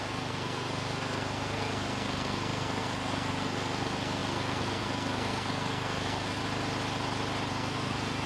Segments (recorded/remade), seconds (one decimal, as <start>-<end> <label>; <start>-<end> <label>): 0.0-6.4 remade; 6.4-7.5 recorded; 7.5-8.3 remade